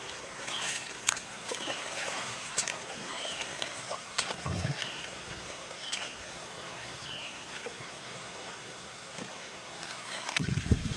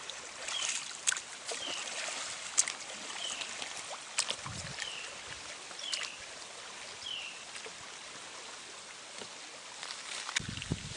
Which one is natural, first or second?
second